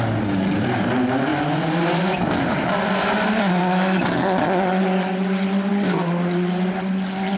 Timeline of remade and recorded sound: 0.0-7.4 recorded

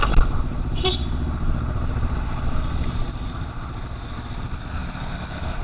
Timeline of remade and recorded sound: 0.0-0.5 recorded; 0.5-3.9 remade; 3.9-5.6 recorded

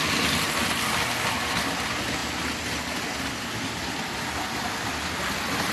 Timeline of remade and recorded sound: 0.0-5.7 recorded